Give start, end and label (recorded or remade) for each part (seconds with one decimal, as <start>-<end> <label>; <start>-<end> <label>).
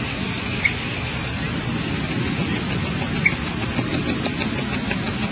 0.0-5.3 recorded